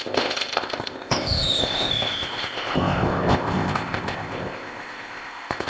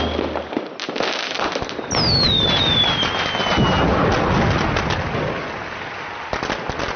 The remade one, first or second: first